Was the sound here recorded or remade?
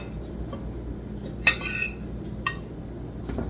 recorded